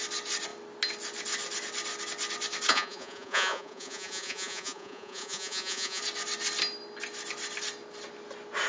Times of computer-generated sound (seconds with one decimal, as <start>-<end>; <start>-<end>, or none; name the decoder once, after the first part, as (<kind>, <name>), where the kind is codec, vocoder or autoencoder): 2.7-6.0 (vocoder, Vocos)